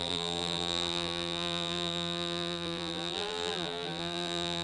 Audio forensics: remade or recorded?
remade